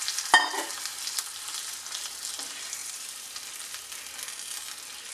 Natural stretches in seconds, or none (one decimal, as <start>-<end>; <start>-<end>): 0.0-0.9; 2.3-2.8; 3.9-5.1

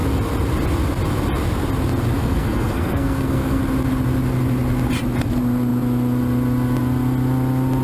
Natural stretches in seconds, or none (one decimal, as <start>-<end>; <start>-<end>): 0.0-2.2; 3.6-7.8

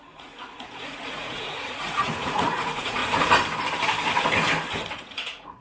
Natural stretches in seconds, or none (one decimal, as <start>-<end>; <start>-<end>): 3.0-4.9

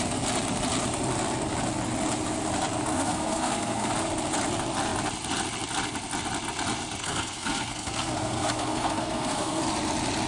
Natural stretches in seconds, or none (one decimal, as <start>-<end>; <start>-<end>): 0.0-2.9; 3.9-7.0; 9.6-10.3

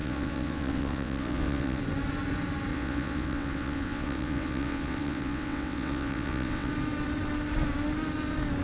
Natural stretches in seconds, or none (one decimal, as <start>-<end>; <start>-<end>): 1.8-2.7; 6.7-8.6